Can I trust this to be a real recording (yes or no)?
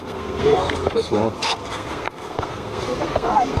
no